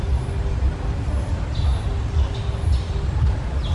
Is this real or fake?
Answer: real